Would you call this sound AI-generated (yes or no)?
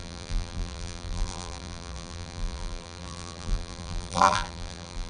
yes